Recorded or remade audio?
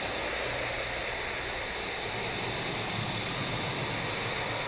recorded